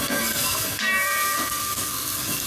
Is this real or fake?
fake